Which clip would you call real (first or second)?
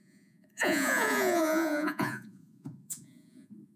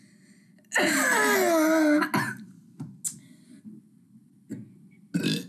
second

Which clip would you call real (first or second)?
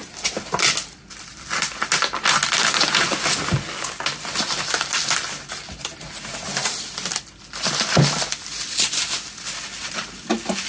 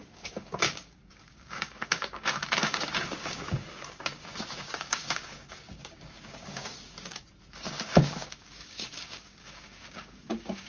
first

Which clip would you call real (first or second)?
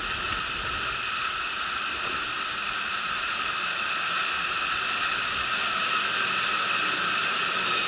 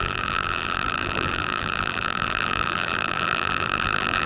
first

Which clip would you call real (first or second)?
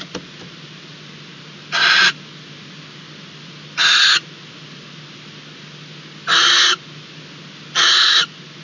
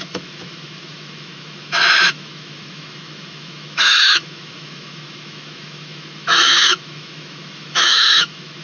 first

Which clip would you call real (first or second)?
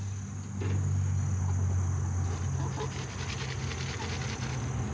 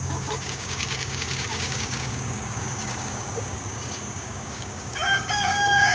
first